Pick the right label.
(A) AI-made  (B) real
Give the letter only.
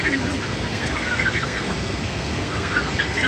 A